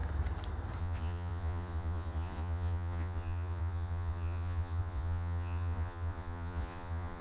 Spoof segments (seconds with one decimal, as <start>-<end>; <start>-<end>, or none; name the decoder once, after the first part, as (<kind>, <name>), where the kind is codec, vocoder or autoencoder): 0.8-7.2 (vocoder, Vocos)